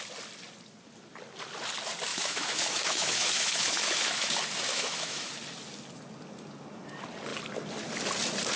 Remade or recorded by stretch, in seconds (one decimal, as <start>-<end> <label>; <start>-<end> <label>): 0.0-2.1 recorded; 2.1-4.3 remade; 4.3-4.7 recorded; 4.7-5.3 remade; 5.3-8.6 recorded